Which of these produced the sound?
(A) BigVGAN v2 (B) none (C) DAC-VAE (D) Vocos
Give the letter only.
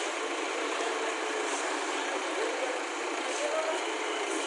B